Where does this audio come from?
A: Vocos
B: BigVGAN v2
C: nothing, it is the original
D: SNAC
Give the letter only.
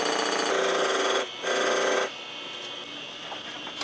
C